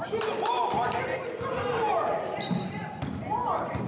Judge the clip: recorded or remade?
recorded